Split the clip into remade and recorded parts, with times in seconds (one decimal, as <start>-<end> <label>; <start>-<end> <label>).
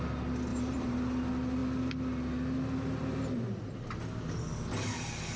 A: 0.0-0.5 recorded; 0.5-1.0 remade; 1.0-5.4 recorded